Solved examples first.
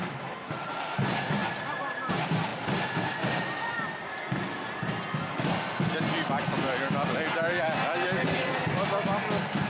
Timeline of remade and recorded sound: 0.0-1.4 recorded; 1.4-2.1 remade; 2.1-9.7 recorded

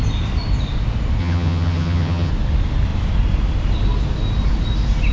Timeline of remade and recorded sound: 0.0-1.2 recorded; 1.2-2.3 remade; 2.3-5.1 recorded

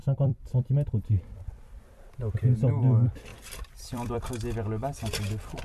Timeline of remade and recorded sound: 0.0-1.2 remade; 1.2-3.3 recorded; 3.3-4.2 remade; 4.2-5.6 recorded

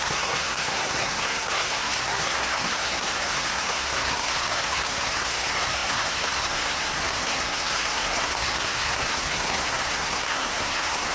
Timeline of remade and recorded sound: 0.0-11.1 remade